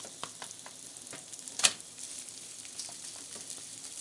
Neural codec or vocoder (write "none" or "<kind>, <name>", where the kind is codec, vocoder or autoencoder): vocoder, BigVGAN v2